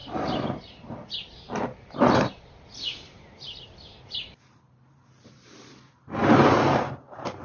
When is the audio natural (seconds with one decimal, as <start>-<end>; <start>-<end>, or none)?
none

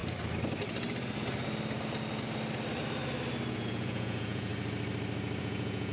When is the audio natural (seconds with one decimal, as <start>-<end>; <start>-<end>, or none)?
0.0-3.5; 4.5-5.4

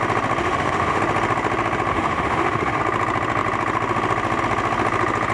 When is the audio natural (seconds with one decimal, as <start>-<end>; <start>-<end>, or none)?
0.0-0.4; 1.0-1.9; 2.8-5.3

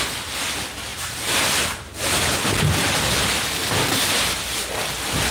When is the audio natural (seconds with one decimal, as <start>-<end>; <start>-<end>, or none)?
0.0-0.9; 2.2-3.6; 4.8-5.3